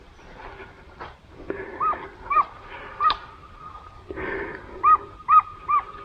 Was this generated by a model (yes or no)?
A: no